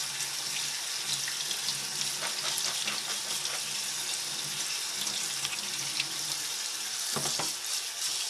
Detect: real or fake real